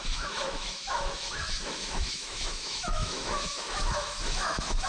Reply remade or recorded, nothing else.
remade